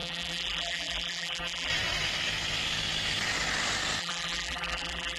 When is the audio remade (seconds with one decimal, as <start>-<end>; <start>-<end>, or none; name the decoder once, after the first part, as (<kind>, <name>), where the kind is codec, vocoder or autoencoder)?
0.0-1.7 (vocoder, BigVGAN v2); 4.0-5.2